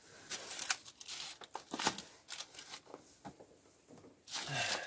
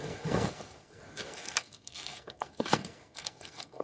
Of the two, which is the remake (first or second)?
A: second